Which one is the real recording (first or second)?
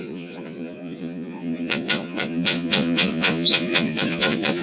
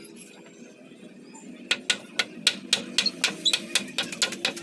second